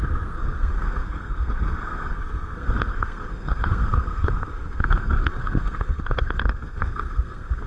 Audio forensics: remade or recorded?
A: remade